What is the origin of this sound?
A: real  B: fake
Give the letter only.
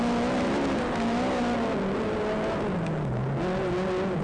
A